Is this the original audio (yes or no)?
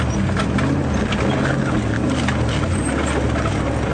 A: yes